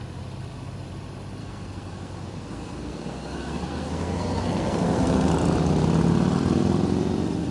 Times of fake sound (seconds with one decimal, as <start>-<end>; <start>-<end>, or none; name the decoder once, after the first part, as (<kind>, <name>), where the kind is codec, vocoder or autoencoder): 1.4-5.3 (codec, SNAC)